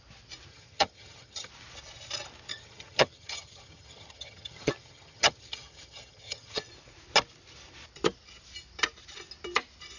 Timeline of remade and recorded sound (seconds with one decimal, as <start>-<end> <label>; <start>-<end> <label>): 0.0-0.5 recorded; 0.5-1.5 remade; 1.5-2.5 recorded; 2.5-6.7 remade; 6.7-10.0 recorded